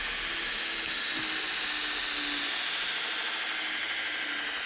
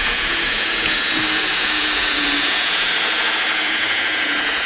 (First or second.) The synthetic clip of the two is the second